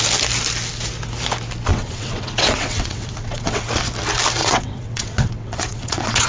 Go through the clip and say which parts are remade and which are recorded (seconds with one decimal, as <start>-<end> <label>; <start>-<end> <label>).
0.0-1.7 recorded; 1.7-3.7 remade; 3.7-4.4 recorded; 4.4-6.3 remade